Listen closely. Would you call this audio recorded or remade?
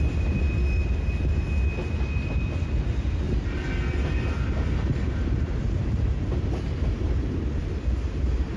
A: recorded